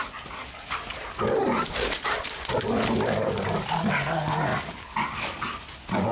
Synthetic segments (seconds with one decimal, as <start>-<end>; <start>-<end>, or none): none